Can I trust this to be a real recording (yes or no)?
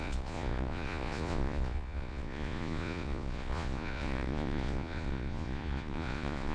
no